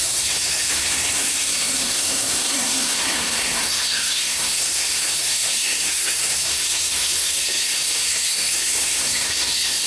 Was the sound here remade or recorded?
remade